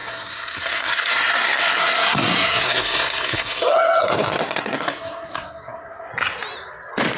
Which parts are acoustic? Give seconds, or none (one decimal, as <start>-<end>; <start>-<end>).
6.1-7.2